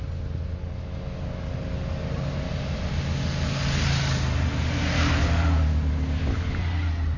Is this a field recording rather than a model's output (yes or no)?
yes